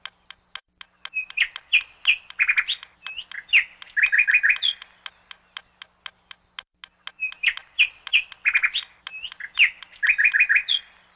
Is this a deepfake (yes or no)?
no